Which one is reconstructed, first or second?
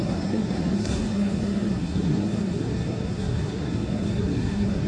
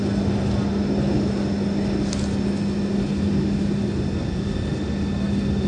first